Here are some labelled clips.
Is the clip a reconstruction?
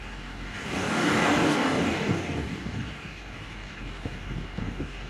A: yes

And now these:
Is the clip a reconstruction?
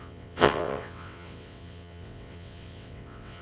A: yes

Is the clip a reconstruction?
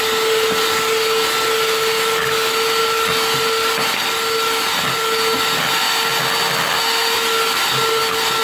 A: no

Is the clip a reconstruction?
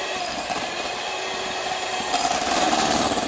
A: yes